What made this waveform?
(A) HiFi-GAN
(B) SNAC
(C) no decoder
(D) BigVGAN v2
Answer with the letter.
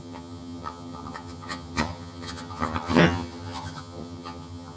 A